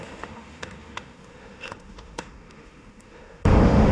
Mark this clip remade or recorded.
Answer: remade